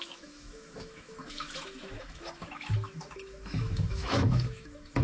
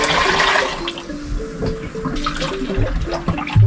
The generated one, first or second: first